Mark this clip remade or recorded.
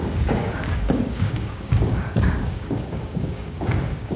remade